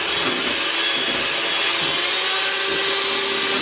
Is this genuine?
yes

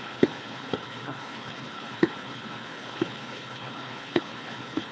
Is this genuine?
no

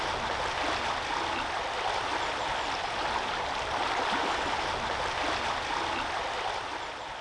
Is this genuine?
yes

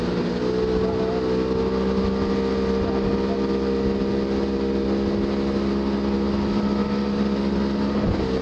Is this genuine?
yes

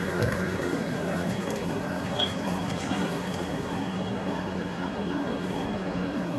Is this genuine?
no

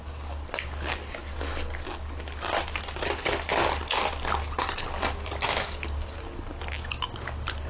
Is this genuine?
yes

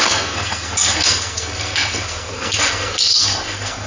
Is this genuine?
no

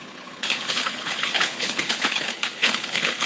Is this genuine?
no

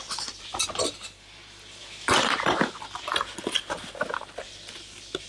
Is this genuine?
yes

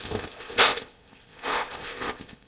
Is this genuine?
no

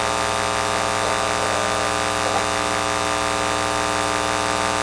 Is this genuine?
yes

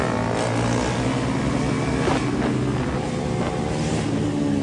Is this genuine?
yes